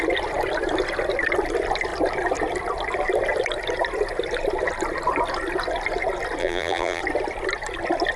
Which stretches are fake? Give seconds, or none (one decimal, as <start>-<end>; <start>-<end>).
6.4-7.0